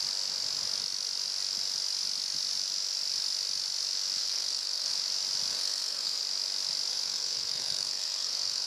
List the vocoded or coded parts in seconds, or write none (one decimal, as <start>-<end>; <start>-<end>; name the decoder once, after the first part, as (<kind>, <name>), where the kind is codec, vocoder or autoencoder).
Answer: 4.2-4.9 (codec, SNAC); 5.5-6.2; 6.9-8.7